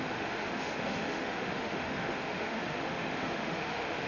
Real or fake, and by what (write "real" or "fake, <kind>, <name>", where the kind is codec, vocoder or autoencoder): fake, autoencoder, DAC-VAE